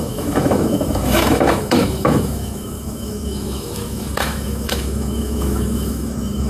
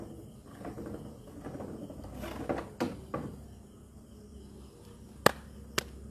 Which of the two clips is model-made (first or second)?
first